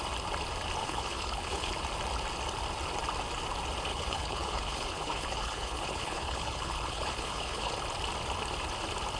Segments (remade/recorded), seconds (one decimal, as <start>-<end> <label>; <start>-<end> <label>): 0.0-0.8 recorded; 0.8-1.7 remade; 1.7-3.9 recorded; 3.9-7.7 remade; 7.7-9.2 recorded